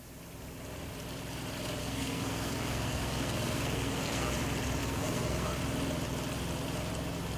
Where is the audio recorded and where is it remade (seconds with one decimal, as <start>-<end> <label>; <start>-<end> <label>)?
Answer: 0.0-1.8 recorded; 1.8-4.3 remade; 4.3-4.8 recorded; 4.8-5.6 remade; 5.6-7.4 recorded